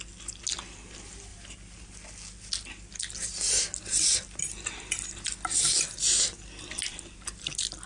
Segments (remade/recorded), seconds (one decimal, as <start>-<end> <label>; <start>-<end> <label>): 0.0-7.9 recorded